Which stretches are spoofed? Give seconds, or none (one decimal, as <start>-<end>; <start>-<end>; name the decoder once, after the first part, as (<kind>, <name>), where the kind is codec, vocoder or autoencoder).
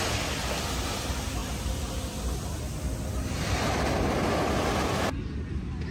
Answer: none